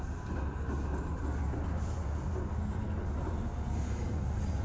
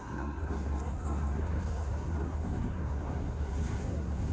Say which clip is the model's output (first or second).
second